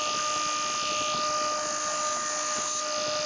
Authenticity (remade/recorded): recorded